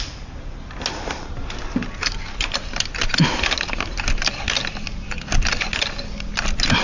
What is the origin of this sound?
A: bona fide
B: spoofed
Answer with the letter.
A